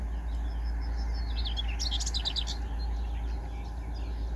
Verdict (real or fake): real